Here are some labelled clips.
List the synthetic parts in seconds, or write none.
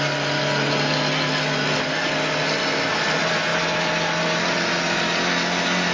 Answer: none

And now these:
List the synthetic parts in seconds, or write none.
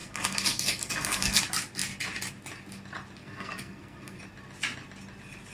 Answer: 0.0-1.4 (codec, SNAC); 3.2-4.2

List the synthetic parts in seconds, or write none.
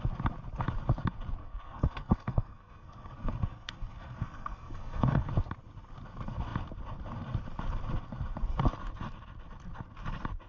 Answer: 1.4-5.3 (codec, SNAC)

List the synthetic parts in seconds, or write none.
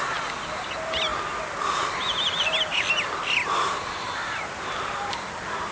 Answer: none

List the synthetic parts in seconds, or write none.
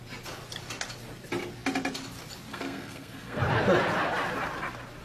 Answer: 2.5-3.4 (codec, SNAC)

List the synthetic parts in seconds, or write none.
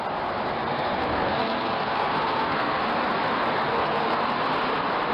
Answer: 0.7-2.8 (codec, SNAC); 3.7-4.2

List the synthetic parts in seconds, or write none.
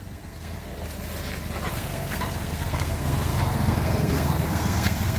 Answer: 0.0-0.7 (codec, SNAC); 1.7-5.2